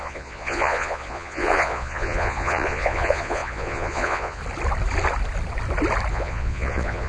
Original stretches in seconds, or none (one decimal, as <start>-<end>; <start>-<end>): 4.4-6.1